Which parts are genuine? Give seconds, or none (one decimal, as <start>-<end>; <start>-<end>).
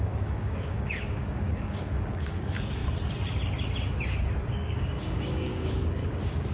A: 2.8-4.5